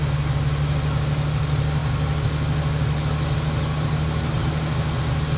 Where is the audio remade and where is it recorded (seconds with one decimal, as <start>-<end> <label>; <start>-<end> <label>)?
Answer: 0.0-5.4 recorded